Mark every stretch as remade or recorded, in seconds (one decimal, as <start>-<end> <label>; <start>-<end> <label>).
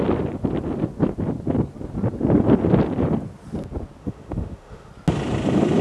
0.0-4.0 recorded; 4.0-4.9 remade; 4.9-5.8 recorded